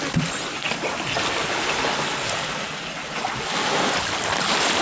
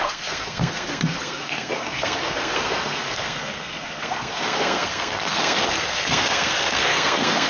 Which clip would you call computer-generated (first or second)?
second